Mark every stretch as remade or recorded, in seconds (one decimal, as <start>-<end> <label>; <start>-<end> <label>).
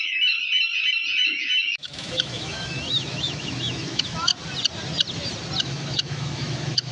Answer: 0.0-0.4 remade; 0.4-1.2 recorded; 1.2-4.3 remade; 4.3-5.6 recorded; 5.6-6.9 remade